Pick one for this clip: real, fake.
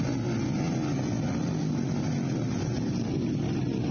real